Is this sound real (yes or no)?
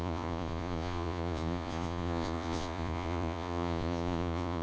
no